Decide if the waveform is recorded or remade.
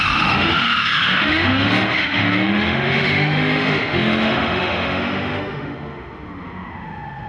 remade